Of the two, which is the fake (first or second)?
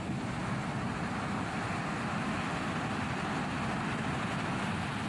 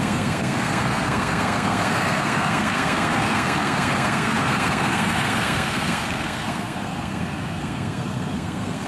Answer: second